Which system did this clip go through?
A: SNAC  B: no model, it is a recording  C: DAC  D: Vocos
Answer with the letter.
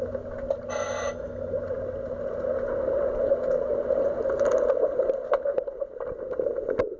B